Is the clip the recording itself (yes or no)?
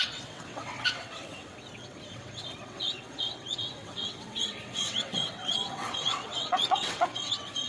no